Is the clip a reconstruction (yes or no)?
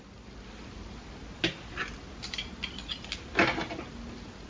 no